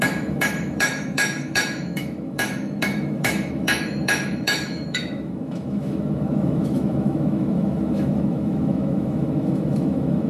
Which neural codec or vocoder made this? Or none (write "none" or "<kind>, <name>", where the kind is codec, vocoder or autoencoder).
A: autoencoder, DAC-VAE